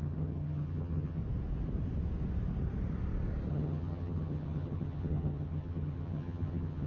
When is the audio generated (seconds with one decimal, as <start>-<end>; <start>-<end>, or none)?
0.0-1.2; 3.5-6.9